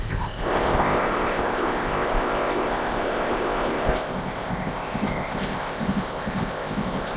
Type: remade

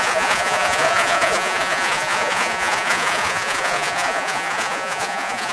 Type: remade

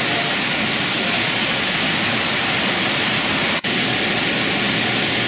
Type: recorded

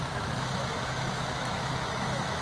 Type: remade